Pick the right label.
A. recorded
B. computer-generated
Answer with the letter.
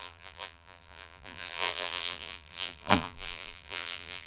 B